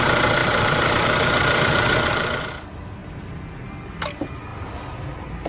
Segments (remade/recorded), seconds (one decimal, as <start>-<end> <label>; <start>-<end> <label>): 0.0-0.4 recorded; 0.4-2.4 remade; 2.4-3.0 recorded; 3.0-3.8 remade; 3.8-5.5 recorded